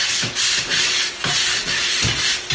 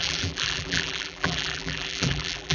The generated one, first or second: second